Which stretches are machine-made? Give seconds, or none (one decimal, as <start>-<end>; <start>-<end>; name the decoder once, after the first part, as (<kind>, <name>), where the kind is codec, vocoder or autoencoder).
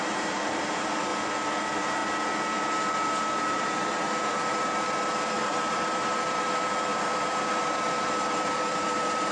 0.0-1.1 (vocoder, BigVGAN v2); 1.6-2.0; 3.4-9.3